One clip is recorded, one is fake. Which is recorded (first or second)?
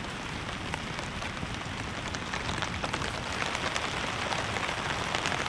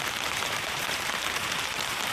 first